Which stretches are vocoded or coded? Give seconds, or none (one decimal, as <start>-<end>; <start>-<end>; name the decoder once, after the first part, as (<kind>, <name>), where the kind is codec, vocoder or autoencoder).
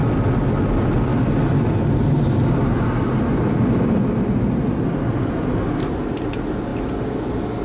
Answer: none